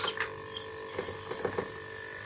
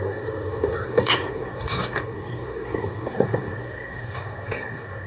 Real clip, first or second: first